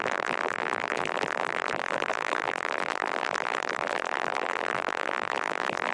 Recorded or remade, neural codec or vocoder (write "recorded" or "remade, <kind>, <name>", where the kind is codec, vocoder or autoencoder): remade, vocoder, BigVGAN v2